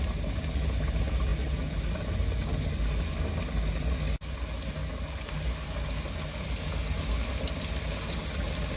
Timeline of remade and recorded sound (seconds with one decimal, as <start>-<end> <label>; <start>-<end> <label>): 0.0-8.8 recorded